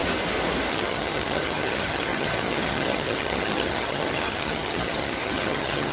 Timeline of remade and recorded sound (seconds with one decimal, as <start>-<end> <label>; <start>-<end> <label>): 0.0-0.7 recorded; 0.7-5.9 remade